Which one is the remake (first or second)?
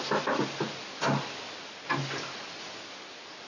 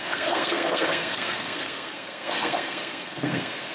second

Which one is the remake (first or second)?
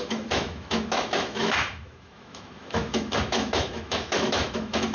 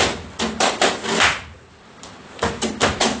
first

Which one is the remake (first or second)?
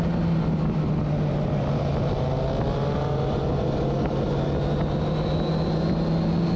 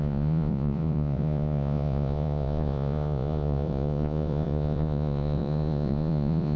second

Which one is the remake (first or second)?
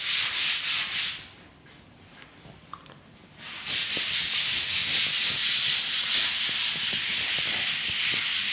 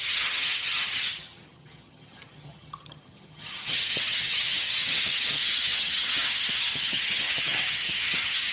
second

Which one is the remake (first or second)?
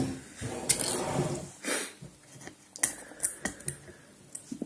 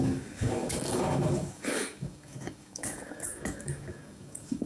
second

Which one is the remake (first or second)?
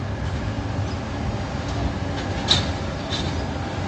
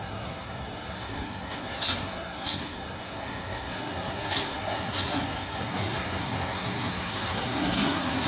second